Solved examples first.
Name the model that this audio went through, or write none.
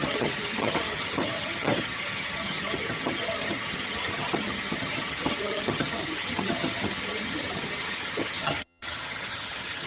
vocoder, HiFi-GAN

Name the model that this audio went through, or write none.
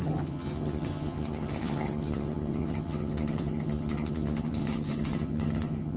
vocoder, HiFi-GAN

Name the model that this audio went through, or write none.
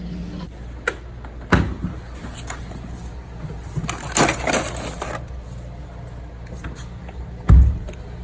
none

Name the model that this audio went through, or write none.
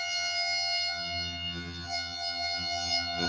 vocoder, HiFi-GAN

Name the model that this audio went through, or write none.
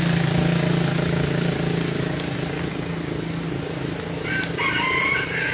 none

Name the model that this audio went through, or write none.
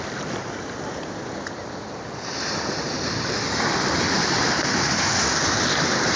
none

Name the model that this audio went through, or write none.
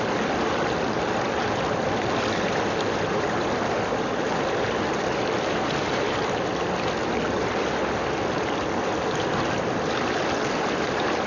none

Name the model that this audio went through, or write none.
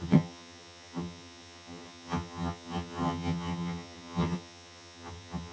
vocoder, HiFi-GAN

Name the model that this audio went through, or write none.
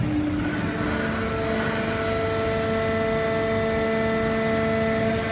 none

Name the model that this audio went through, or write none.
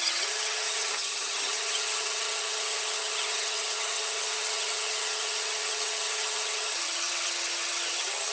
vocoder, HiFi-GAN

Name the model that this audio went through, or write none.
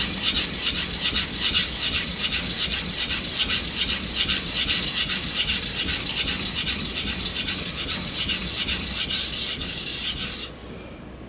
none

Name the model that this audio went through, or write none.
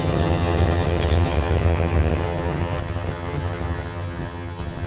vocoder, HiFi-GAN